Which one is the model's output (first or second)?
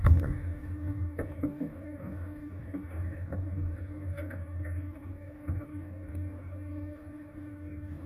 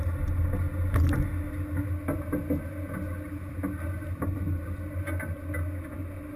first